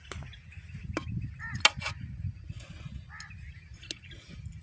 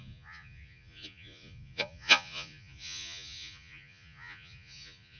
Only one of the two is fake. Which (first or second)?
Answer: second